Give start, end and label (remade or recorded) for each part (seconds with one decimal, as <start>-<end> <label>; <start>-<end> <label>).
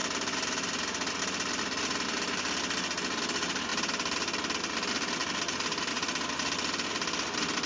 0.0-7.7 recorded